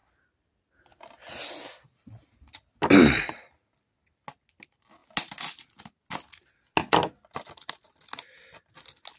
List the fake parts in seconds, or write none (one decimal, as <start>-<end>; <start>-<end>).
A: none